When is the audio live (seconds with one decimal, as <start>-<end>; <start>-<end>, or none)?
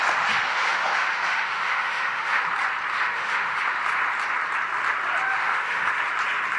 0.0-0.5; 2.4-2.9; 3.6-5.4; 5.9-6.6